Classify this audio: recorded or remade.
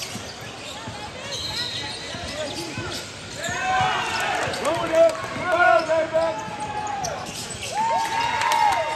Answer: recorded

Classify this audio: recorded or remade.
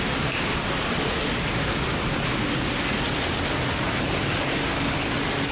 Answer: recorded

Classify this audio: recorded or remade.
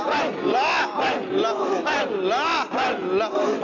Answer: recorded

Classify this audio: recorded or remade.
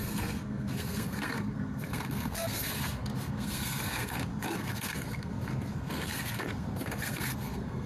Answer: remade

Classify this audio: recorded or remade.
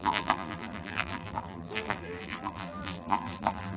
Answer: remade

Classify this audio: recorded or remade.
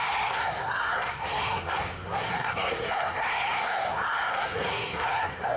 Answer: remade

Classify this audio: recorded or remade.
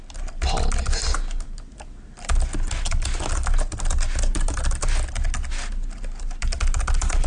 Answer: recorded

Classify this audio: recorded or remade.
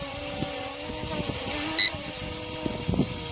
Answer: recorded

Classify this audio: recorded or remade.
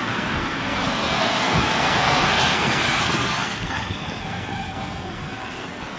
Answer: remade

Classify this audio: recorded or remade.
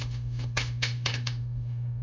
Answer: remade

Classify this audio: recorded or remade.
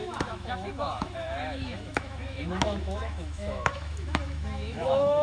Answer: remade